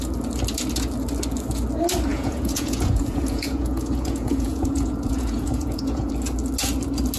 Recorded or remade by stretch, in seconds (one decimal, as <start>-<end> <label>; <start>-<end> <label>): 0.0-2.1 recorded; 2.1-6.1 remade; 6.1-7.2 recorded